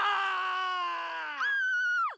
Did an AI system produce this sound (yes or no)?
no